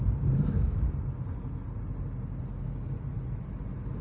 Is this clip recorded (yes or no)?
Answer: yes